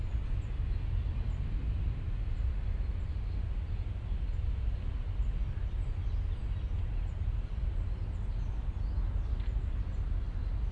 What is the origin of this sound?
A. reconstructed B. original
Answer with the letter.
B